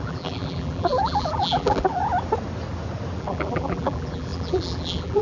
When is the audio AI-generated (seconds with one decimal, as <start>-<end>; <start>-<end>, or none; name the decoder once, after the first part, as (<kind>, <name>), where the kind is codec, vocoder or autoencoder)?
0.0-2.0 (vocoder, BigVGAN v2); 3.2-5.2